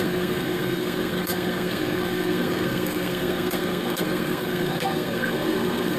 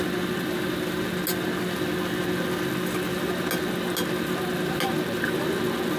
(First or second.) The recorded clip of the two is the second